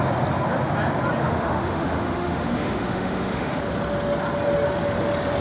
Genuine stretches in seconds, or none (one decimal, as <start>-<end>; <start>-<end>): 0.0-1.2; 3.6-5.4